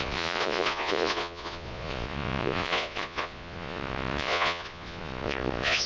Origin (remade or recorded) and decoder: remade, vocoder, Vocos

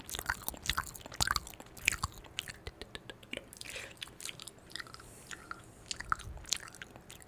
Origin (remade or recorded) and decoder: recorded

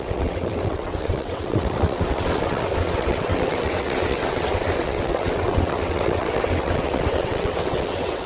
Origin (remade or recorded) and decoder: remade, vocoder, WaveNeXt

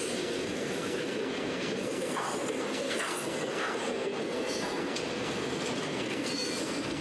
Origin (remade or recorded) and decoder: remade, codec, SNAC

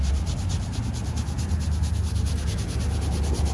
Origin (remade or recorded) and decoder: recorded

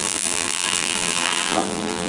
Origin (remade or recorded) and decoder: remade, vocoder, BigVGAN v2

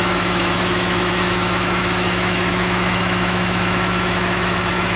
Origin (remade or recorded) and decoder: remade, autoencoder, DAC-VAE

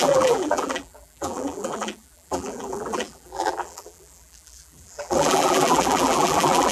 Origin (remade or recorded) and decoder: remade, vocoder, BigVGAN v2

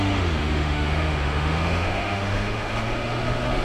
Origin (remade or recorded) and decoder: remade, autoencoder, DAC-VAE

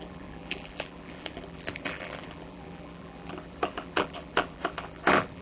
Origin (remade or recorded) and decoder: remade, vocoder, BigVGAN v2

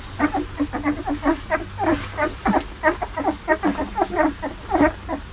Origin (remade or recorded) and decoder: recorded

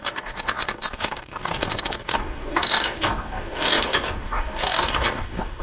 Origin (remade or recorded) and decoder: remade, codec, DAC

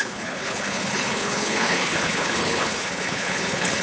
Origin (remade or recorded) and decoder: remade, codec, HILCodec